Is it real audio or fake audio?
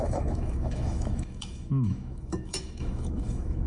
fake